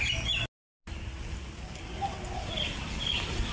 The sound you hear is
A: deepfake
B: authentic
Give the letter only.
B